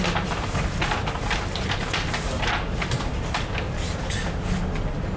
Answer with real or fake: real